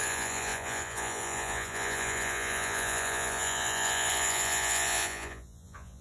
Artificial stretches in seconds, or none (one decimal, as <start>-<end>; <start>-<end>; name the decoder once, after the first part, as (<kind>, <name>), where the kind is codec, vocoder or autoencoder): 0.0-6.0 (vocoder, Vocos)